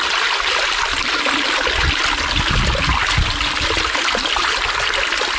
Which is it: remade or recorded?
recorded